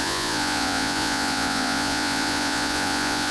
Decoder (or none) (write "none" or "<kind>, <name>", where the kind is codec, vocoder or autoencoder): vocoder, Vocos